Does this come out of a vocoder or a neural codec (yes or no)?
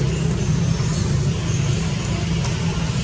no